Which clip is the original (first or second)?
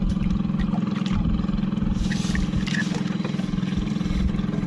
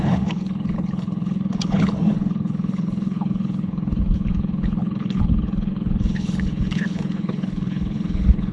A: first